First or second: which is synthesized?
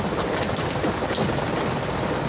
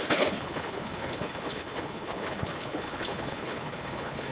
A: second